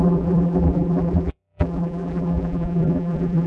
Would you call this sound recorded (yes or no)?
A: no